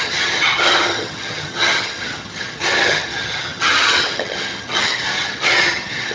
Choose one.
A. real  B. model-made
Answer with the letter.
B